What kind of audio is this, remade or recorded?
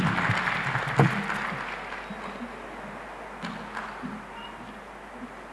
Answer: recorded